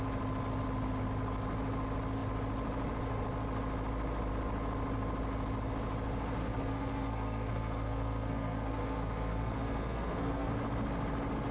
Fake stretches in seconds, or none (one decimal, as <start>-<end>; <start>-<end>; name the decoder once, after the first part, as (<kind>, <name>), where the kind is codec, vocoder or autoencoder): 6.4-10.5 (codec, SNAC)